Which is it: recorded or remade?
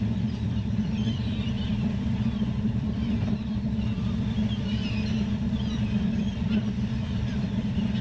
remade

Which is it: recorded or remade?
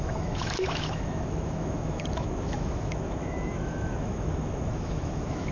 remade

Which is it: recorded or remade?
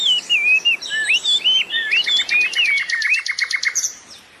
recorded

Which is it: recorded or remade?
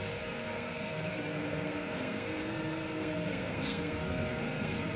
remade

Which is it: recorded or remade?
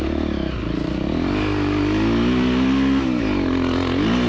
recorded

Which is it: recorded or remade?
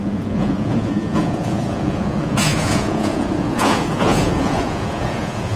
remade